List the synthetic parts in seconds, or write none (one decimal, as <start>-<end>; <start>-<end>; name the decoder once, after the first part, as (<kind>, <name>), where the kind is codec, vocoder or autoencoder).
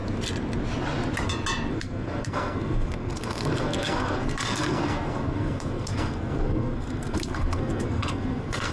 1.7-8.7 (codec, SNAC)